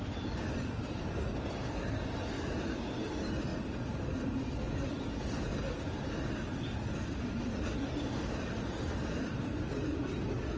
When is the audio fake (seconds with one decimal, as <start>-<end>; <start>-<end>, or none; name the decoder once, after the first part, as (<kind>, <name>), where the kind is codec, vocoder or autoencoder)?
none